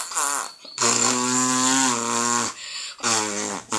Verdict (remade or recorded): recorded